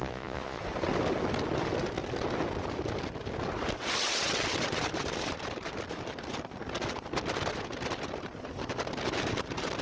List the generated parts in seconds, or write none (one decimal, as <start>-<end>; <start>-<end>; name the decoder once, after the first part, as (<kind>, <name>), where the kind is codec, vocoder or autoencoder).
0.0-0.6 (vocoder, Vocos)